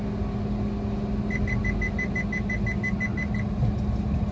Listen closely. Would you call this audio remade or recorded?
recorded